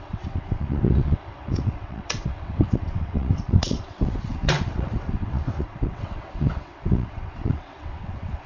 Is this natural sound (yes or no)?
no